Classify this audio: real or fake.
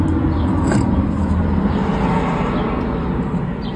real